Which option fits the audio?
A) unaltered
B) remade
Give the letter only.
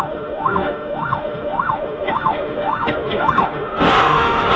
B